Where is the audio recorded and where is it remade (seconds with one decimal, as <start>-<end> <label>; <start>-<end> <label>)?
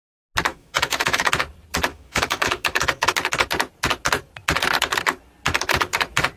0.0-0.5 recorded; 0.5-1.3 remade; 1.3-1.9 recorded; 1.9-3.1 remade; 3.1-6.4 recorded